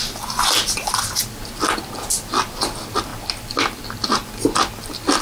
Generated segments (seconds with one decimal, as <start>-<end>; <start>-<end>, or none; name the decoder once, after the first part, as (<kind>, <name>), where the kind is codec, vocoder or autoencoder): none